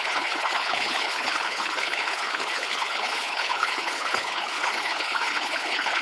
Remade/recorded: remade